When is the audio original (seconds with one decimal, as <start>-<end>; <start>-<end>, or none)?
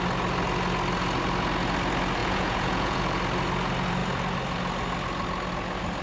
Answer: 0.0-2.2; 3.0-6.0